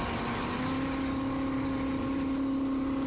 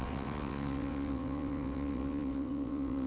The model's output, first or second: second